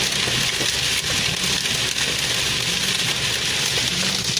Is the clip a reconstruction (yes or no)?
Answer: no